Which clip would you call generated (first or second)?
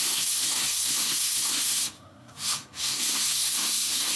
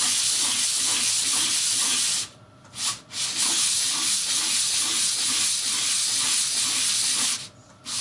first